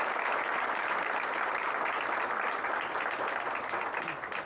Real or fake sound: real